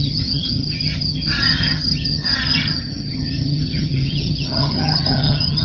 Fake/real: fake